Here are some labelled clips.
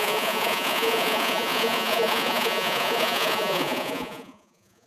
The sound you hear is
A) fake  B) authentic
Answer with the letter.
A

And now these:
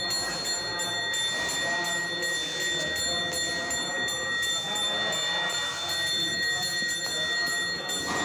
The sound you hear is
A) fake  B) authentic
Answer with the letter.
B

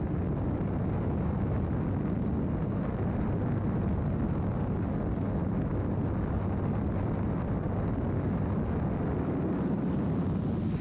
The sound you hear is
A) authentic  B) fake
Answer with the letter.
A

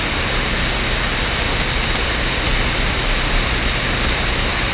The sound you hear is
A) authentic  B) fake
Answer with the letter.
A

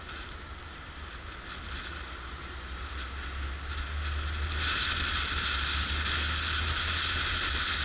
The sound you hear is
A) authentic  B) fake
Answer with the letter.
A